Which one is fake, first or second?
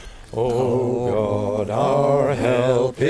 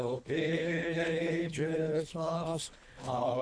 second